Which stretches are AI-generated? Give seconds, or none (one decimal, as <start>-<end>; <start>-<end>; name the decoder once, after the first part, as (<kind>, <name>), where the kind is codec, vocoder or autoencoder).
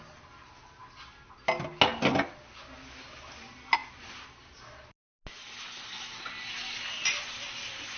none